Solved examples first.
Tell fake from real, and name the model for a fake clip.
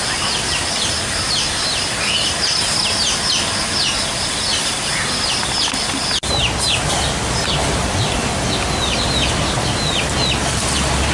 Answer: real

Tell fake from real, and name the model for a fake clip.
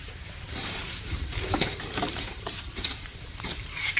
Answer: fake, vocoder, BigVGAN v2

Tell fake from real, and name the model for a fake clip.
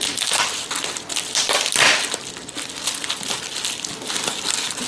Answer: real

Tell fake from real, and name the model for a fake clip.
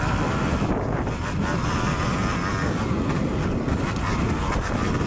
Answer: real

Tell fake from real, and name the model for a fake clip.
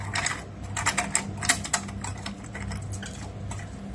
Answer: real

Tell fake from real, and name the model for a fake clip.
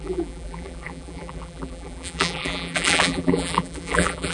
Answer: fake, vocoder, BigVGAN v2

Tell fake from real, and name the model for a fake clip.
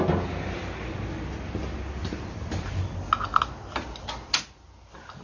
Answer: real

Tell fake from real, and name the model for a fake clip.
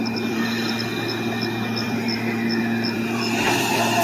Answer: fake, vocoder, BigVGAN v2